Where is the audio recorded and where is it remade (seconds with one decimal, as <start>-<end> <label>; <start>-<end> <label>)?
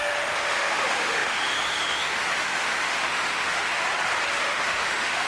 0.0-3.8 remade; 3.8-4.4 recorded; 4.4-5.3 remade